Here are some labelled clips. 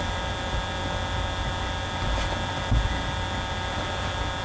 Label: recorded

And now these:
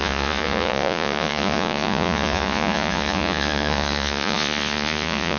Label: remade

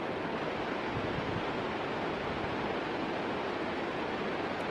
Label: recorded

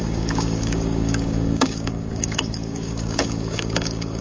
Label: remade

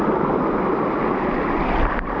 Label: recorded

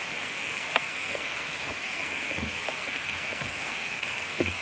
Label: remade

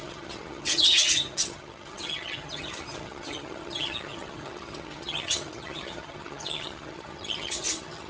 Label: remade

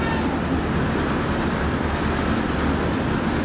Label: remade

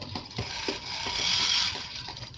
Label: recorded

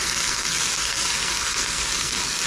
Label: remade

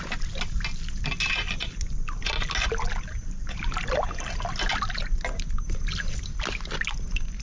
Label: recorded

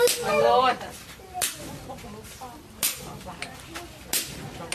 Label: recorded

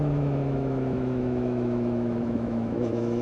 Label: remade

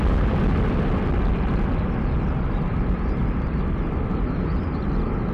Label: remade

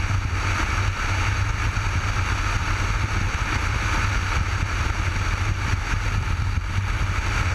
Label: recorded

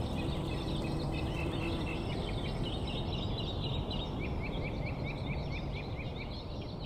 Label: recorded